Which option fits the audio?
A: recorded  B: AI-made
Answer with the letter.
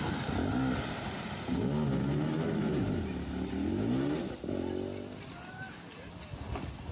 A